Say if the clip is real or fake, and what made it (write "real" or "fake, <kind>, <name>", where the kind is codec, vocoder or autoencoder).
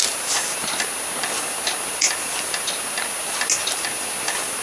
real